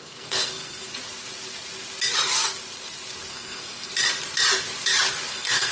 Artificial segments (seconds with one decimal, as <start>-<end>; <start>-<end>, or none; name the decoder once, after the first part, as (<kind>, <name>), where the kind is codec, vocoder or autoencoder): 0.0-0.9 (codec, SNAC); 3.3-3.9; 5.3-5.7